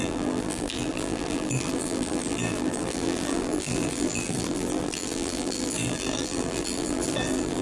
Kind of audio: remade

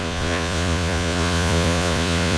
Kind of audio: remade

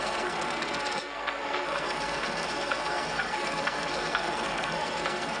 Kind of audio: remade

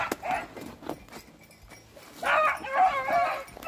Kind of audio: recorded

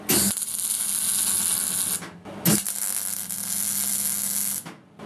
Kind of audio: recorded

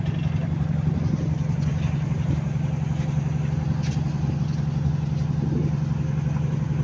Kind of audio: recorded